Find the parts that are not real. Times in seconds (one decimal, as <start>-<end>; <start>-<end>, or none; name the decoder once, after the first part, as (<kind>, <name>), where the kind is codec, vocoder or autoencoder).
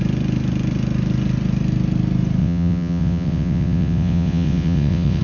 2.4-5.2 (vocoder, WaveNeXt)